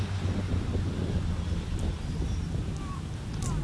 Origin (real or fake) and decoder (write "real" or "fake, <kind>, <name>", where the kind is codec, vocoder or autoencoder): real